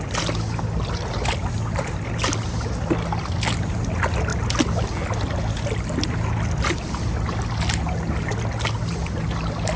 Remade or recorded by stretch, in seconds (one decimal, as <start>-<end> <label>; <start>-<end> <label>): 0.0-9.8 recorded